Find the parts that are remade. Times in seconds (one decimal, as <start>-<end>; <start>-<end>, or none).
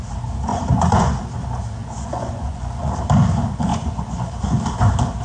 0.5-1.2; 1.8-2.9; 3.7-4.3